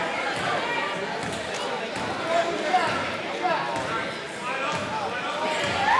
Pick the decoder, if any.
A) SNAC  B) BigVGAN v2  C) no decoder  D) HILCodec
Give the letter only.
C